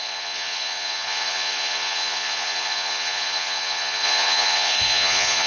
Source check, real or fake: fake